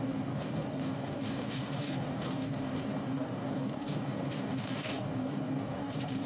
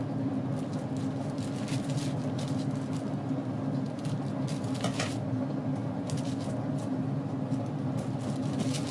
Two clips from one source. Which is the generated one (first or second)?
first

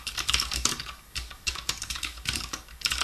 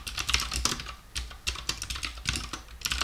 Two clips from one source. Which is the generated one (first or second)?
first